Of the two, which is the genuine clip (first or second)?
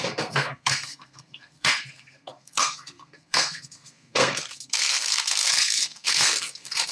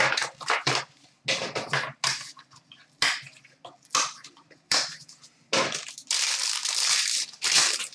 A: second